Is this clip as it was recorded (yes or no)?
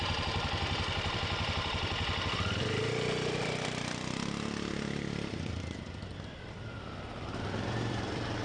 no